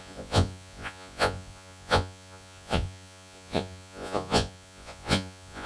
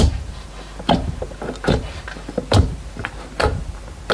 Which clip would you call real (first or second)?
second